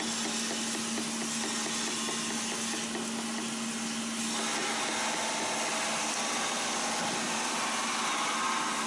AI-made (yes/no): no